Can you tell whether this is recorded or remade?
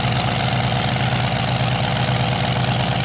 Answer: recorded